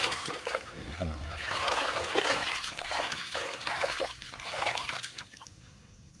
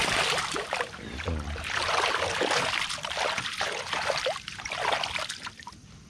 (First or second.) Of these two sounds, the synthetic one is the first